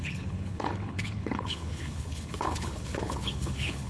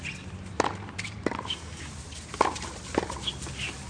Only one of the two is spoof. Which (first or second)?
first